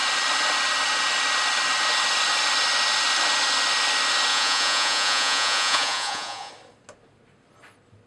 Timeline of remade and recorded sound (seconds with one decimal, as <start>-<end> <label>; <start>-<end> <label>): 0.0-4.3 recorded; 4.3-6.5 remade; 6.5-8.1 recorded